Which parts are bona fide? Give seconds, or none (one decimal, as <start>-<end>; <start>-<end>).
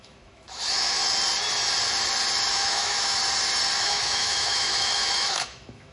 1.0-2.5; 3.2-3.8